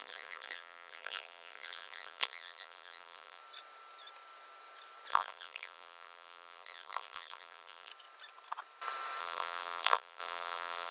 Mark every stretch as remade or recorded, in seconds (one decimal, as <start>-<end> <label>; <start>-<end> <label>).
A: 0.0-3.4 remade; 3.4-5.1 recorded; 5.1-7.9 remade; 7.9-9.2 recorded; 9.2-10.9 remade